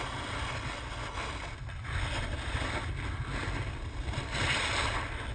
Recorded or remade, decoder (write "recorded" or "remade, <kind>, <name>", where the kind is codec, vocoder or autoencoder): recorded